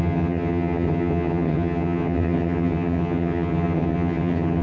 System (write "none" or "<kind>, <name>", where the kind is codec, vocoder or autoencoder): vocoder, HiFi-GAN